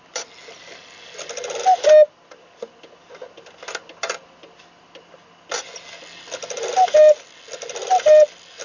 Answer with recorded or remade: recorded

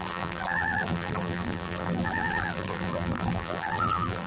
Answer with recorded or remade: remade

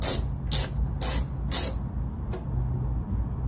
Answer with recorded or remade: recorded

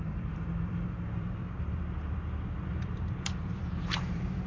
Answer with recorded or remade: remade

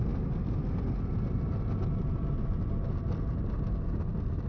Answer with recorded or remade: recorded